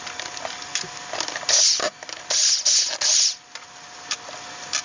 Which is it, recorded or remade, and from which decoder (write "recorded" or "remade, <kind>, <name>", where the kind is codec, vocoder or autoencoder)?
recorded